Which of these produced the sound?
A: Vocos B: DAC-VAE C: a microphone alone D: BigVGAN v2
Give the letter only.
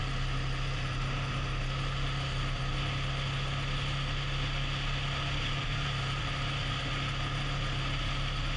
C